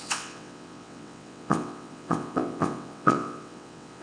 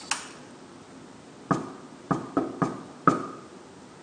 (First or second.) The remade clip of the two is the first